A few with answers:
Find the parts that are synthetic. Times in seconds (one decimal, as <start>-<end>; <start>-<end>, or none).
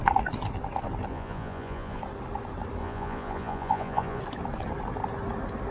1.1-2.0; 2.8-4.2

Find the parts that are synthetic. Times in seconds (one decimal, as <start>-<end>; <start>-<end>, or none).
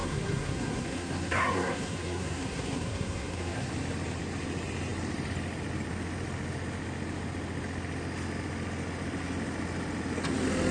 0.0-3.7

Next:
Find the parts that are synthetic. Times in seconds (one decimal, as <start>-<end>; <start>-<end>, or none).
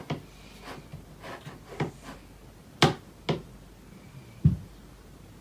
none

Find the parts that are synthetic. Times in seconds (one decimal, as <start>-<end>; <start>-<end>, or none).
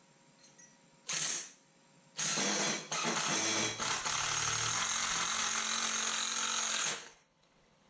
6.8-7.9